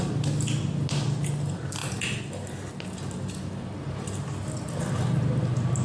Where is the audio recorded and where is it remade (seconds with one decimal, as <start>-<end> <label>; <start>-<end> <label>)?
0.0-5.8 recorded